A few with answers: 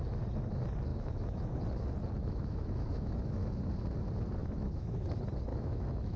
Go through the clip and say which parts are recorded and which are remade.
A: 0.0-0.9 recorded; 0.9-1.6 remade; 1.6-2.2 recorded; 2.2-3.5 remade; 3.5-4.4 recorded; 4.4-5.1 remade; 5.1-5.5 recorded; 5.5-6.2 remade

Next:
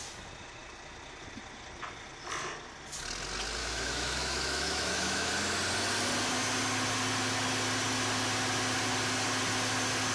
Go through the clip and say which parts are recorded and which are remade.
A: 0.0-3.6 recorded; 3.6-5.3 remade; 5.3-10.1 recorded

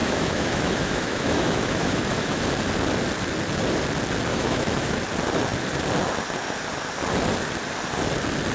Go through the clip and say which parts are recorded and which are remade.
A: 0.0-2.4 remade; 2.4-4.3 recorded; 4.3-5.0 remade; 5.0-8.5 recorded